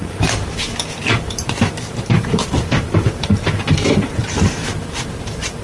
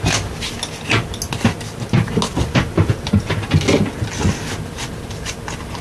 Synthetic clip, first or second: first